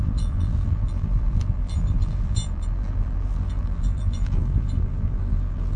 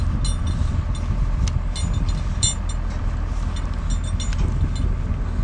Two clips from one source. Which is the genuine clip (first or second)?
second